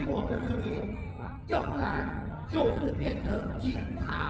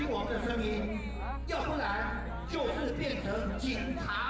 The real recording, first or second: second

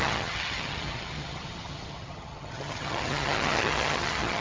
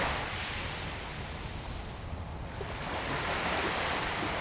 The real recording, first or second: second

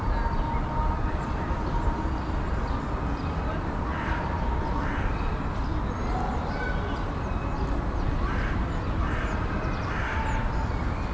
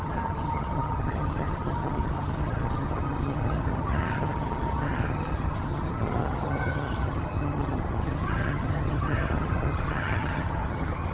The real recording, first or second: first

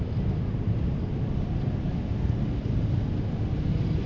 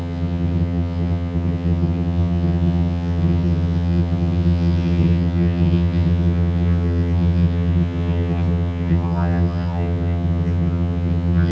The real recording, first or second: first